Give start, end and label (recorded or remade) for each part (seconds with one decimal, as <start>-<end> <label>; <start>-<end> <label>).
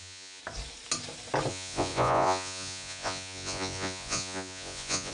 0.0-0.4 remade; 0.4-1.5 recorded; 1.5-5.1 remade